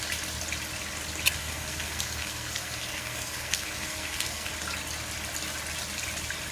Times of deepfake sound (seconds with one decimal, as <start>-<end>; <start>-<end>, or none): 1.4-4.5